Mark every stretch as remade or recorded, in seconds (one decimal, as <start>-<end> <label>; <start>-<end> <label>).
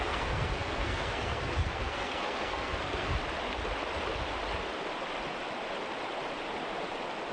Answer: 0.0-3.2 remade; 3.2-7.3 recorded